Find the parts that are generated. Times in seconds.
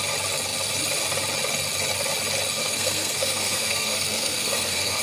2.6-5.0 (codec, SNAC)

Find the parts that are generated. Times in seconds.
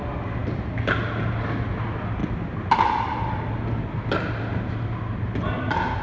none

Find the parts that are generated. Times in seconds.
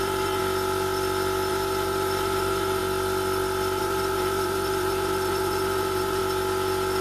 0.0-0.4 (vocoder, BigVGAN v2); 1.5-2.8; 3.8-6.2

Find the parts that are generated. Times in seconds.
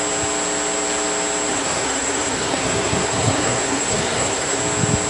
1.5-4.6 (codec, SNAC)